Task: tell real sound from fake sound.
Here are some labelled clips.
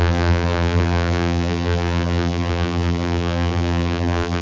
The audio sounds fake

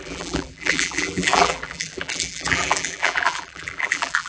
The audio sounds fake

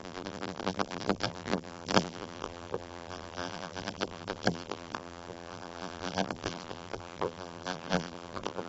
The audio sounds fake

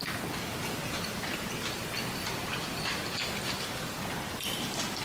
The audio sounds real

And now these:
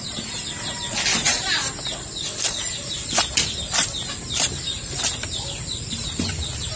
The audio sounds fake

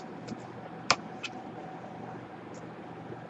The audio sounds real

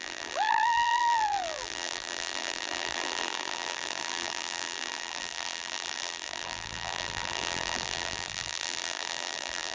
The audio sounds fake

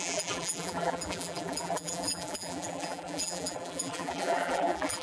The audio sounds fake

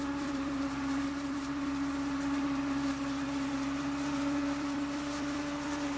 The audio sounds fake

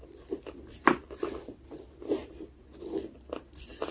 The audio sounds real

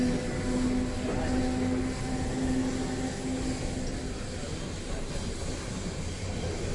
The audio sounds real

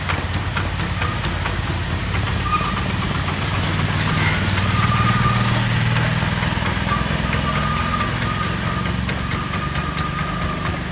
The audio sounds real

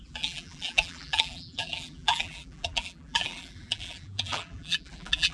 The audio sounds fake